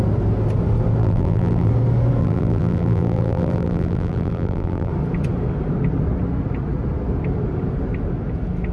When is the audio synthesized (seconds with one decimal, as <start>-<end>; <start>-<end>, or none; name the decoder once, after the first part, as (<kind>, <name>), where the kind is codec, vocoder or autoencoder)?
1.0-1.7 (vocoder, BigVGAN v2); 2.2-4.9